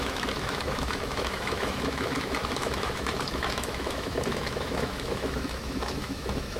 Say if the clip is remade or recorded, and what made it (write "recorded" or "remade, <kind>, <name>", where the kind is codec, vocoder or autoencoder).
remade, autoencoder, DAC-VAE